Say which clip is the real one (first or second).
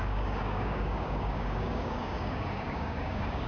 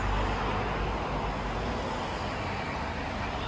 second